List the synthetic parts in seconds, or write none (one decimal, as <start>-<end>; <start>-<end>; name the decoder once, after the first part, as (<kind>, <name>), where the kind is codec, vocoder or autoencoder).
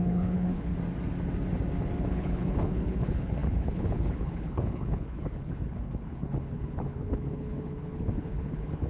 0.0-0.7 (codec, HILCodec); 2.0-8.9